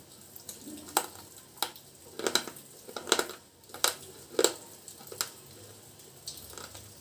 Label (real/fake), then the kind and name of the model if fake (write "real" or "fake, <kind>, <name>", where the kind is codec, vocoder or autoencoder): real